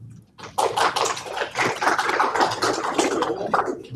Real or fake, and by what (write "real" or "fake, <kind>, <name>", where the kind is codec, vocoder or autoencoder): real